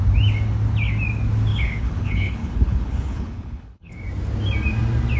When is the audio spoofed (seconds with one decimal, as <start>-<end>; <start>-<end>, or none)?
1.5-3.9